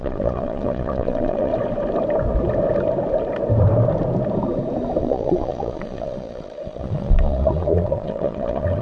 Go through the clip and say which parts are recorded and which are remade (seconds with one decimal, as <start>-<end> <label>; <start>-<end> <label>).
0.0-1.5 remade; 1.5-5.0 recorded; 5.0-8.8 remade